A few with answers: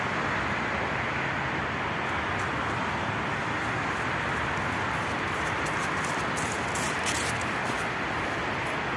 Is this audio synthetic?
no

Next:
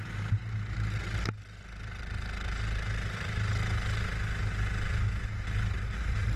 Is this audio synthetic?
no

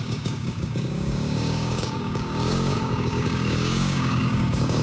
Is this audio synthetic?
yes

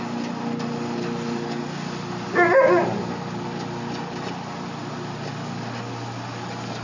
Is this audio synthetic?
no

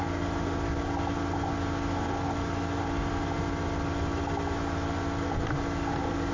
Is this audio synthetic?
no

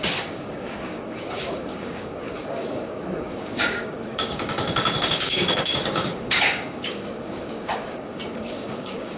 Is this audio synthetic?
yes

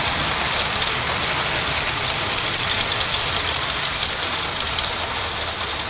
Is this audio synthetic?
no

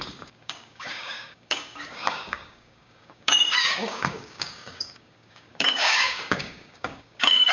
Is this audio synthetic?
yes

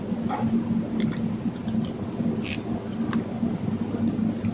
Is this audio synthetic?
no